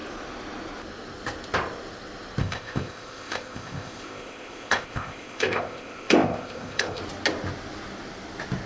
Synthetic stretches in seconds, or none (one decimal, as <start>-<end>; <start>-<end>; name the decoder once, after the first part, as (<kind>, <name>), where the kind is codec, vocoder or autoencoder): 2.4-7.0 (codec, ZipCodec)